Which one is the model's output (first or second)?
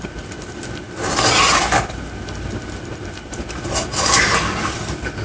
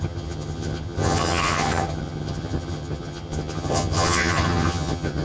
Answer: second